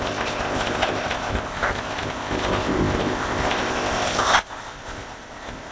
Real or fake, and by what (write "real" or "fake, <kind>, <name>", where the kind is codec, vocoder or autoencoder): fake, codec, ZipCodec